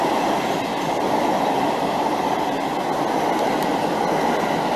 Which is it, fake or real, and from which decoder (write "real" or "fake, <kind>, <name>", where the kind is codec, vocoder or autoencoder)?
real